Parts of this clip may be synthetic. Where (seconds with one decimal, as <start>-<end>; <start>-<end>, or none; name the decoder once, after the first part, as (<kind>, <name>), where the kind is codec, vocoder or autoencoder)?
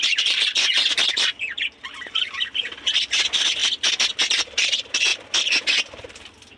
0.0-5.1 (vocoder, BigVGAN v2); 5.9-6.6